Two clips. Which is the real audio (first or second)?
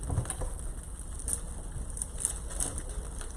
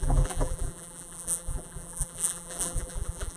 first